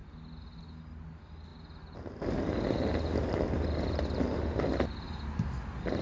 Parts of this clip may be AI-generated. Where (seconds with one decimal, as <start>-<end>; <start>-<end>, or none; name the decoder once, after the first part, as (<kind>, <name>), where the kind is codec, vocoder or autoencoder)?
none